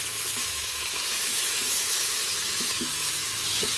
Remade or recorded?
remade